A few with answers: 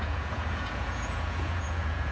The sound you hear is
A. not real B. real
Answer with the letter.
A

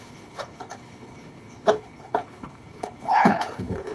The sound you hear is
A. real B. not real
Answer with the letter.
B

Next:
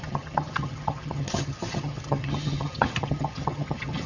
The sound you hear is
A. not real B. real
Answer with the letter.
A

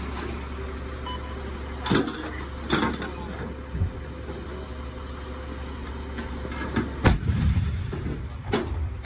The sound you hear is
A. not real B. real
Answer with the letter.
B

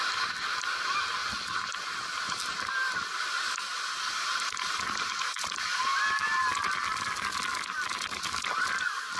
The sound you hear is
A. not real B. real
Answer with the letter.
B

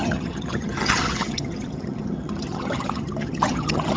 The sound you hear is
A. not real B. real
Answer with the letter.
A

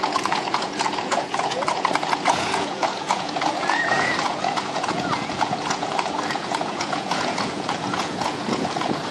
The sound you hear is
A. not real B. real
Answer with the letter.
A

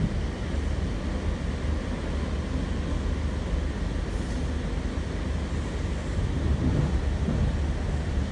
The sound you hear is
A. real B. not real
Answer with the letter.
A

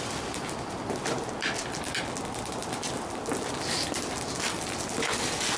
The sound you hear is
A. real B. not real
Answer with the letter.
B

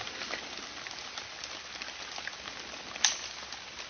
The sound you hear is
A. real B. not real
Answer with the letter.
A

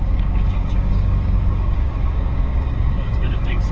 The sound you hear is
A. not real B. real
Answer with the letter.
A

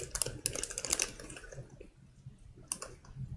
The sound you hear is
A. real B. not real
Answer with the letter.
A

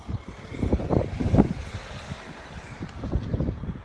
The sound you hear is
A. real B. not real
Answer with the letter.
B